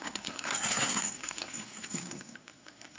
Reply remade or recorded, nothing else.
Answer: remade